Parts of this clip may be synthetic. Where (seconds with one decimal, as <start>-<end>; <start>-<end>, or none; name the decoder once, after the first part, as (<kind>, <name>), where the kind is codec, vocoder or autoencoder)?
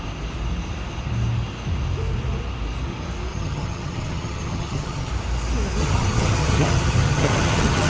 3.3-5.1 (vocoder, HiFi-GAN); 5.8-7.9